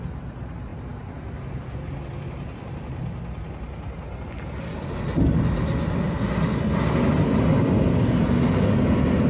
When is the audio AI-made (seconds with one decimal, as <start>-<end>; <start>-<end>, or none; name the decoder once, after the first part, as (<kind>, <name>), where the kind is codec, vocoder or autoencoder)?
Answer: none